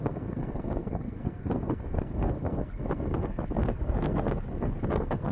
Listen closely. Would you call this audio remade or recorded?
remade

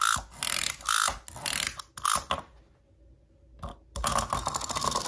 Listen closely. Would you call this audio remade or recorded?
recorded